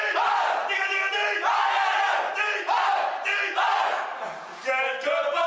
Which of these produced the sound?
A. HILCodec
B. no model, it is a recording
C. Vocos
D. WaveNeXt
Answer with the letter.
B